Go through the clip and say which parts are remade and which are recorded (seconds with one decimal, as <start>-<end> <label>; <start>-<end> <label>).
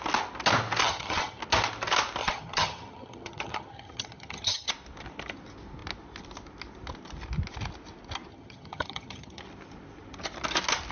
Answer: 0.0-0.8 recorded; 0.8-1.4 remade; 1.4-2.2 recorded; 2.2-4.7 remade; 4.7-8.3 recorded; 8.3-9.4 remade; 9.4-10.9 recorded